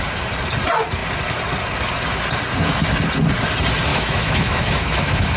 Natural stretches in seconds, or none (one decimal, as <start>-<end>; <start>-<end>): 0.0-3.9

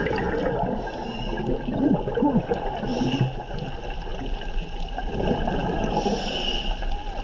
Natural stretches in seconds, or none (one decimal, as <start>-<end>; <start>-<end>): 0.0-7.2

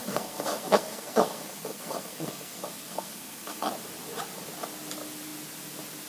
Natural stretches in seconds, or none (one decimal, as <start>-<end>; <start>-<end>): 3.7-6.1

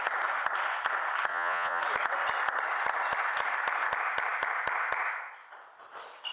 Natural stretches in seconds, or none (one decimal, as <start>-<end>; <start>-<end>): 0.0-1.3; 1.8-6.3

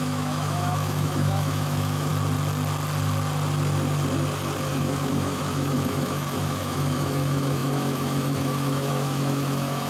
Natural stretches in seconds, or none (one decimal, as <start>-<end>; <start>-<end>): 2.1-4.7

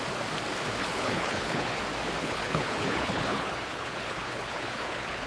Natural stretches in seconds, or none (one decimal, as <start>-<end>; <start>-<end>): 0.0-0.8; 1.8-2.2

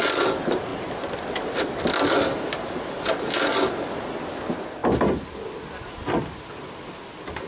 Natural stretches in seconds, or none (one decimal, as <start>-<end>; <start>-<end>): 0.0-7.5

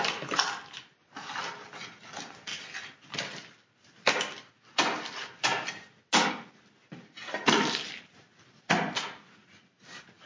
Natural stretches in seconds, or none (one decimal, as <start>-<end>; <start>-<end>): 0.0-10.3